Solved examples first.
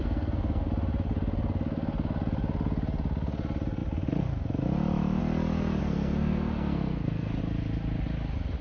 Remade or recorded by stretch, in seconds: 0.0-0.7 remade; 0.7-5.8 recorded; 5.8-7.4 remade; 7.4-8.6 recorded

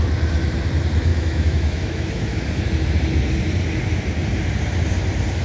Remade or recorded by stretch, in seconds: 0.0-1.1 recorded; 1.1-2.5 remade; 2.5-5.4 recorded